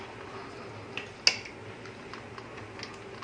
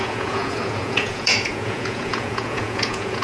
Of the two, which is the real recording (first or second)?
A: first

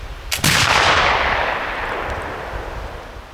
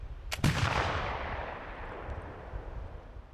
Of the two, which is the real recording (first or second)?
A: first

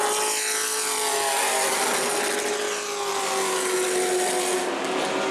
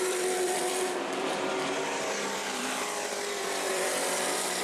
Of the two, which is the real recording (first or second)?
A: first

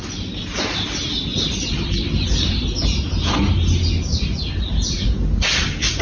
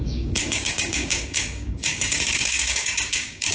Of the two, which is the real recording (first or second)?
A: first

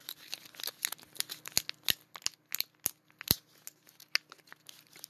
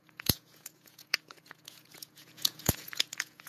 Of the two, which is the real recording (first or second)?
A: first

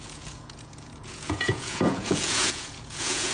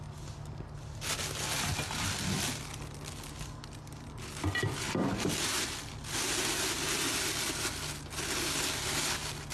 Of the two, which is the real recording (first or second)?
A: second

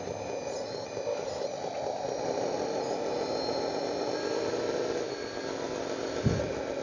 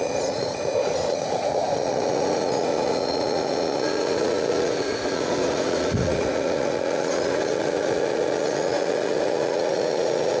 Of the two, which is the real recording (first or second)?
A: first